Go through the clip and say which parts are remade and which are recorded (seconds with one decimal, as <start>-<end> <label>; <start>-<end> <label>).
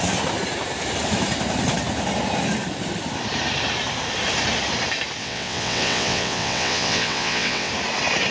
0.0-5.2 recorded; 5.2-7.7 remade; 7.7-8.3 recorded